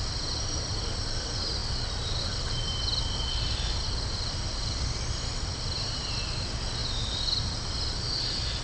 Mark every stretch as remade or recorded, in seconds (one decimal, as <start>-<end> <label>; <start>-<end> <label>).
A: 0.0-8.6 recorded